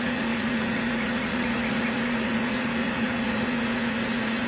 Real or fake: fake